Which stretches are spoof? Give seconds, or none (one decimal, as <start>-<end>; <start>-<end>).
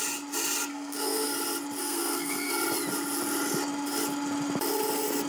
0.7-1.3; 1.8-2.5